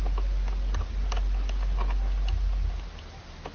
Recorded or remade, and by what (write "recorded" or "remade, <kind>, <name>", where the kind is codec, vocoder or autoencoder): recorded